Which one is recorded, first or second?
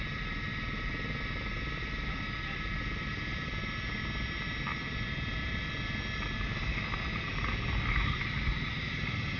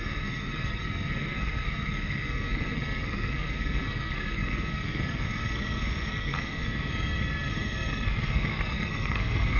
first